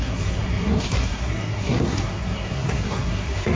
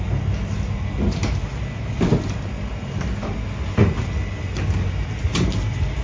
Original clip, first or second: second